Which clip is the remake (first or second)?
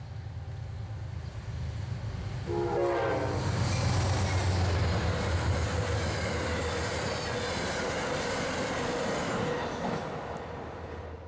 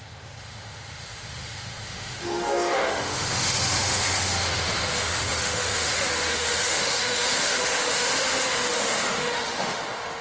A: second